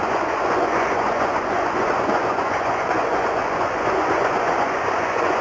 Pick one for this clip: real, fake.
fake